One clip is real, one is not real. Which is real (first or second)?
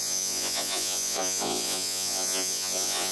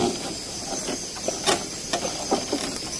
second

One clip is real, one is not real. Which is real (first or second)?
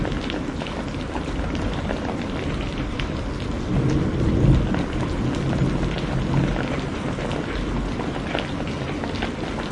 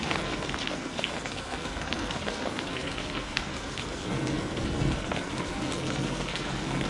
first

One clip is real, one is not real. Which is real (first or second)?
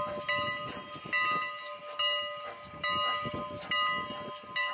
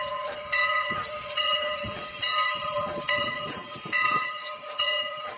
first